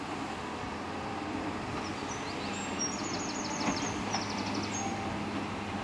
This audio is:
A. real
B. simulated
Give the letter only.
A